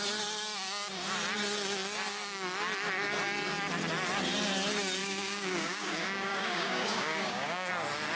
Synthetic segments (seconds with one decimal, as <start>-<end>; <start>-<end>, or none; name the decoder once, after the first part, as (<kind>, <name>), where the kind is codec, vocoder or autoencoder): 5.0-7.7 (codec, DAC)